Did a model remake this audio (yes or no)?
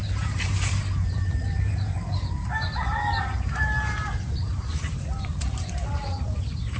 yes